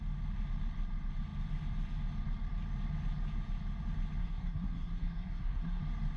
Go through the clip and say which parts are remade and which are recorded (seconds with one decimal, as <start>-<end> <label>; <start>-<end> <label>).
0.0-4.2 recorded; 4.2-5.8 remade; 5.8-6.2 recorded